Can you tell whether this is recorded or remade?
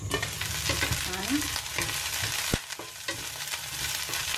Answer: recorded